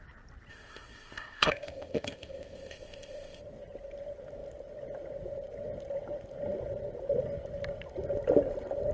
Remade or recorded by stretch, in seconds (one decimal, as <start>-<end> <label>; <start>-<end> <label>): 0.0-0.5 recorded; 0.5-3.4 remade; 3.4-8.9 recorded